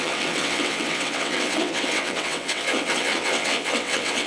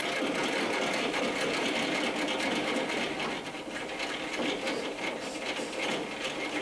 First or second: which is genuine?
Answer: second